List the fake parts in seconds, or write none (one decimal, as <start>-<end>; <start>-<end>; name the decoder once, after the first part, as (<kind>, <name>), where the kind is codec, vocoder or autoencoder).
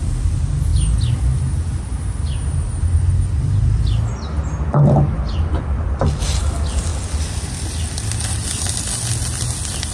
none